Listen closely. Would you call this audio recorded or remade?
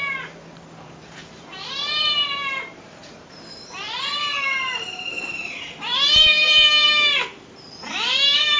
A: remade